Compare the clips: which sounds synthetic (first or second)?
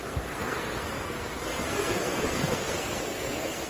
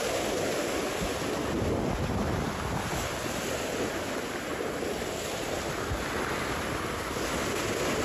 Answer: first